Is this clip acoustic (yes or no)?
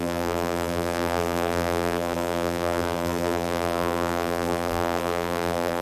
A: no